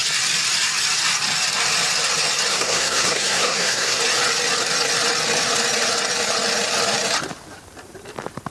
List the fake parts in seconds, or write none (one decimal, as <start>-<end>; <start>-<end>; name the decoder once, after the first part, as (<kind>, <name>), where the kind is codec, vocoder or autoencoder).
2.5-4.0 (codec, SNAC)